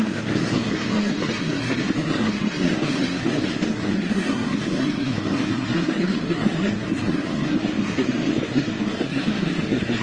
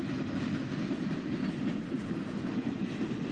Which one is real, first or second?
second